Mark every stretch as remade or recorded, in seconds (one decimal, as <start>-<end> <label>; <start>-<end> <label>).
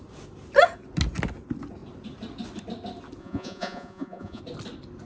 0.0-3.2 recorded; 3.2-4.4 remade; 4.4-5.1 recorded